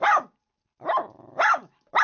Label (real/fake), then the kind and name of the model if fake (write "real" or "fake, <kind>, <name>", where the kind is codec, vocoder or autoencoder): real